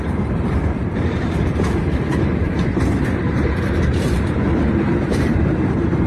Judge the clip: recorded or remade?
remade